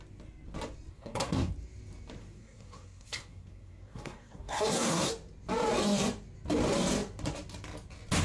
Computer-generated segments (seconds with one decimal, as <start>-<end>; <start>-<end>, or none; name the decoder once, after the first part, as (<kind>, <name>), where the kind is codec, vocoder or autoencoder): 0.9-1.5 (codec, SNAC); 2.2-5.1